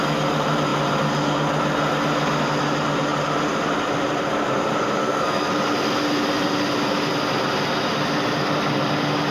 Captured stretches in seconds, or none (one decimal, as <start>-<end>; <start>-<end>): 0.0-5.0; 5.5-9.3